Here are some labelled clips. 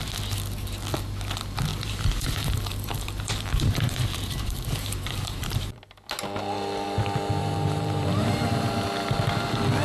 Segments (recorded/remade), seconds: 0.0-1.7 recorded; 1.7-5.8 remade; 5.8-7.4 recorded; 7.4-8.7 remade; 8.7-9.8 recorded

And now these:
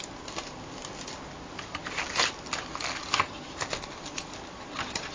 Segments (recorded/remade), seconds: 0.0-5.1 recorded

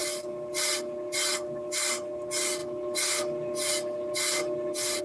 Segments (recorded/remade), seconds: 0.0-0.7 remade; 0.7-1.3 recorded; 1.3-1.9 remade; 1.9-5.0 recorded

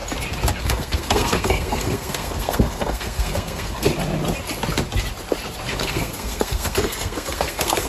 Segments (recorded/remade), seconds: 0.0-0.6 recorded; 0.6-3.9 remade; 3.9-5.7 recorded; 5.7-7.9 remade

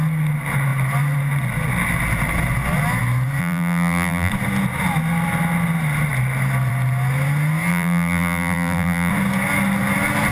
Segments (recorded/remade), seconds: 0.0-3.4 recorded; 3.4-4.3 remade; 4.3-7.7 recorded; 7.7-9.1 remade; 9.1-10.3 recorded

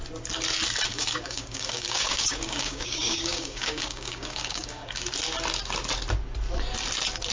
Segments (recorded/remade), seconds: 0.0-0.9 recorded; 0.9-5.1 remade; 5.1-7.3 recorded